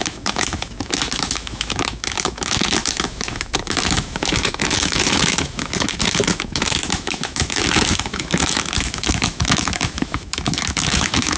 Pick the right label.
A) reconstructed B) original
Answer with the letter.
A